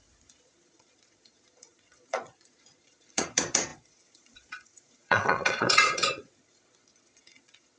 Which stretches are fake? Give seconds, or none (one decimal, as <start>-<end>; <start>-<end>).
0.0-7.8